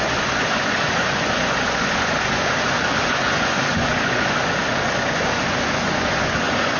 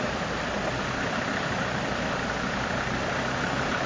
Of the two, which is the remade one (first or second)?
first